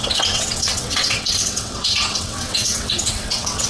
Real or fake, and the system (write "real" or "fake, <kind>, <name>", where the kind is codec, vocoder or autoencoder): fake, vocoder, WaveNeXt